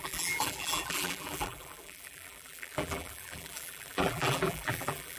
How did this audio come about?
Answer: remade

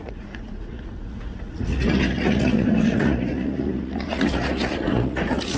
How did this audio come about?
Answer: remade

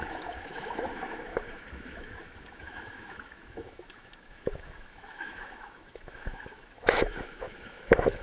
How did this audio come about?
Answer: remade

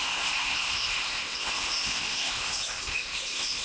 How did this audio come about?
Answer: remade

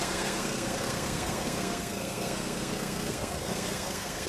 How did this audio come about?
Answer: remade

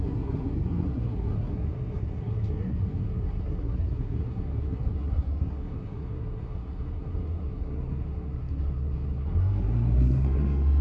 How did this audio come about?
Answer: remade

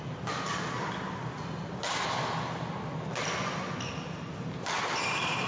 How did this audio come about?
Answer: recorded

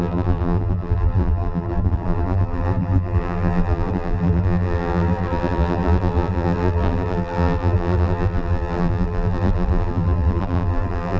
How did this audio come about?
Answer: remade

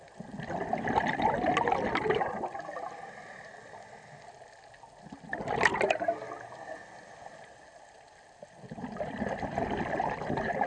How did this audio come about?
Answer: recorded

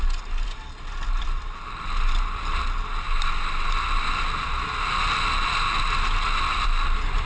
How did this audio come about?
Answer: recorded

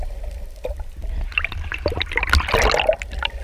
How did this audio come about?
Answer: recorded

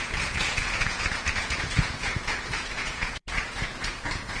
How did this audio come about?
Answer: remade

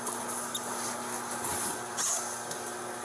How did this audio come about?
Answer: recorded